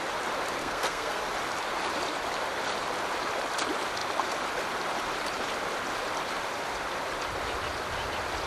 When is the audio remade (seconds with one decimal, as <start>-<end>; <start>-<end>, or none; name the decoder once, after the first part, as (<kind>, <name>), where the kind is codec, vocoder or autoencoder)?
0.6-1.2 (codec, SNAC)